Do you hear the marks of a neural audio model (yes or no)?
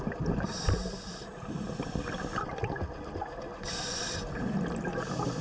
yes